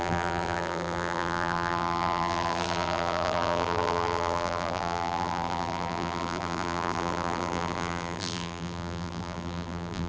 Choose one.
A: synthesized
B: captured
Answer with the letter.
A